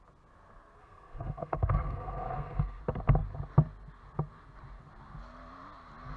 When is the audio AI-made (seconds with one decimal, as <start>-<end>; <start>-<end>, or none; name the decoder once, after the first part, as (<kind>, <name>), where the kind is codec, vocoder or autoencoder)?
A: 0.8-2.8 (codec, SNAC)